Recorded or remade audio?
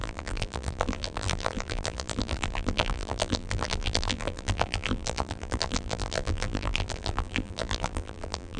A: remade